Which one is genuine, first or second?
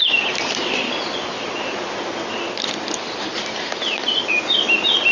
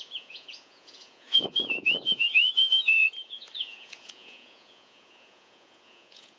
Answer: first